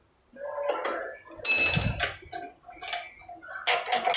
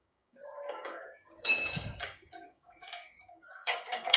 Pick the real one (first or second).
first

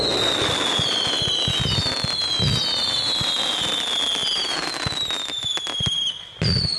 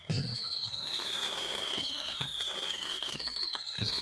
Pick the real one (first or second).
first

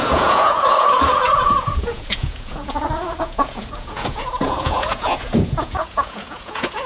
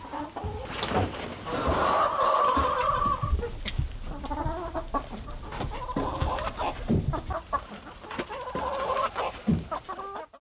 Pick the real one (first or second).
second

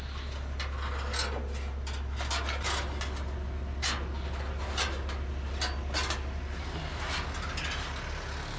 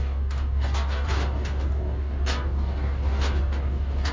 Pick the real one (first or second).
first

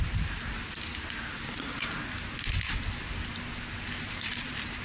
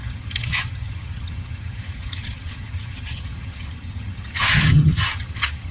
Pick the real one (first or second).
first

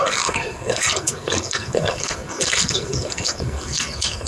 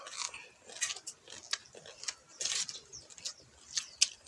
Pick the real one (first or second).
second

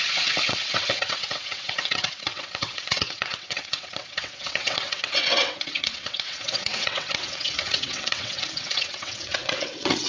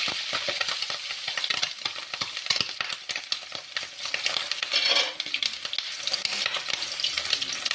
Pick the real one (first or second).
second